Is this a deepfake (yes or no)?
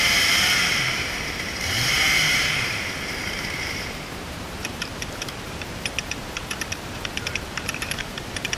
yes